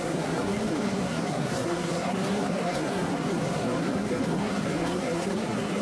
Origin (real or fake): fake